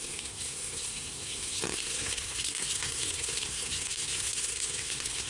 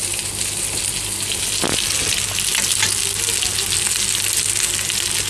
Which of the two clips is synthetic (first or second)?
first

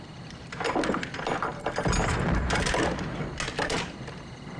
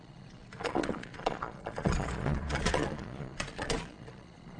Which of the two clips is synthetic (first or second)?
second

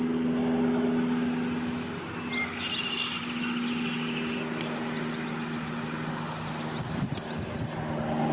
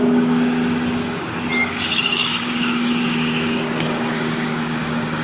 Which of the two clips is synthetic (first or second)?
second